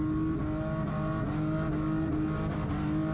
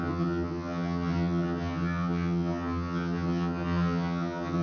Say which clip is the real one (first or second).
first